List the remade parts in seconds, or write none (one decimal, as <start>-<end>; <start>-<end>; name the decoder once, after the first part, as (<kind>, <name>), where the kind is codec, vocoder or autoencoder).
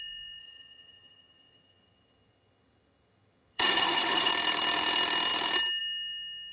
0.4-4.3 (vocoder, HiFi-GAN)